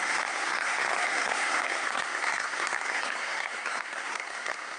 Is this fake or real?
fake